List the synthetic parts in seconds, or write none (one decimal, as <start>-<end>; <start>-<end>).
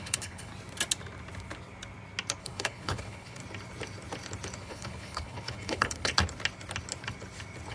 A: 0.0-0.5; 2.4-3.4; 4.6-6.1